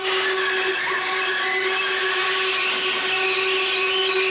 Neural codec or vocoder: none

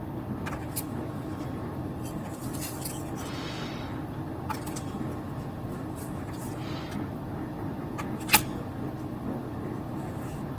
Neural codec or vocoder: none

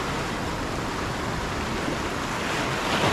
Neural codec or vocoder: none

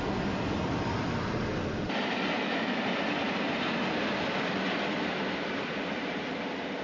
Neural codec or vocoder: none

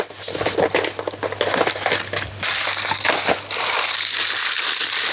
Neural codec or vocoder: none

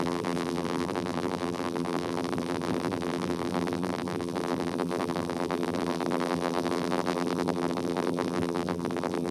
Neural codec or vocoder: vocoder, BigVGAN v2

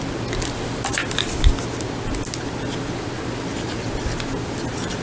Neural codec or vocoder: none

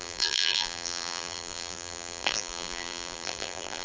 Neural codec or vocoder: vocoder, BigVGAN v2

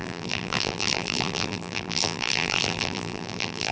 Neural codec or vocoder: vocoder, BigVGAN v2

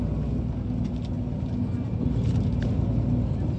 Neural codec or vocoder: none